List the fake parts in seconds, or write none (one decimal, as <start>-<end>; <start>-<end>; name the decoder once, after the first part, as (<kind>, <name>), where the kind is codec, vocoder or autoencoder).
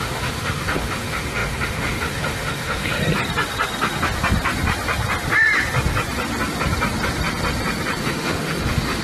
0.0-3.0 (autoencoder, DAC-VAE); 8.0-9.0